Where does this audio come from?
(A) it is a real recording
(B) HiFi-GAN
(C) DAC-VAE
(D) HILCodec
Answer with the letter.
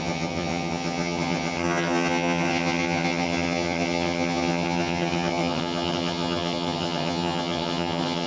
B